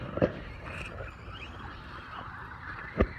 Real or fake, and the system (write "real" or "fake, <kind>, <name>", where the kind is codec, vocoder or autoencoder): fake, vocoder, BigVGAN v2